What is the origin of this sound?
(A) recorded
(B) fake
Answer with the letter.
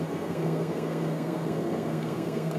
B